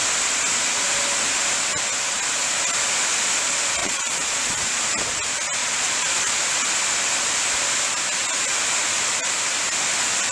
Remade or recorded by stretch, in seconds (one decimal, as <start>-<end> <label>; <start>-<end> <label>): 0.0-3.8 recorded; 3.8-4.8 remade; 4.8-5.6 recorded; 5.6-6.4 remade; 6.4-10.3 recorded